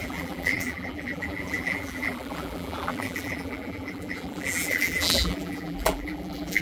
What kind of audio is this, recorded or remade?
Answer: remade